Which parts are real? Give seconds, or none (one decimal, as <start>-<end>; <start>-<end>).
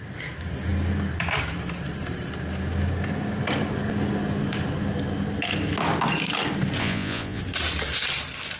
0.0-6.8; 7.4-8.6